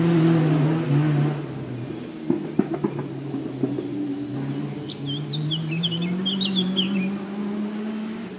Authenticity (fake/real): real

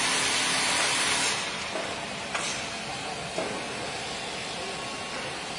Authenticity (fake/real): real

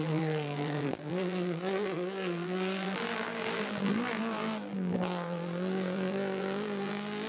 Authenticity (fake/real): fake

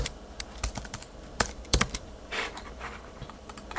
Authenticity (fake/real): fake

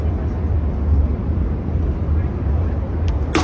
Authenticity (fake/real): real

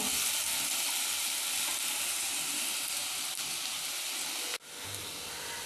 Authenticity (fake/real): real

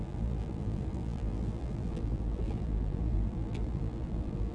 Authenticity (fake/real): fake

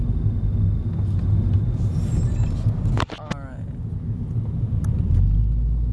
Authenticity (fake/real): real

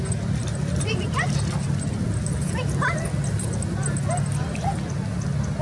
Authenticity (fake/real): real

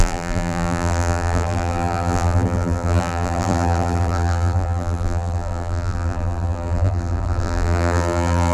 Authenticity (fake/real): fake